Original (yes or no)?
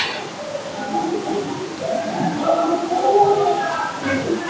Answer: yes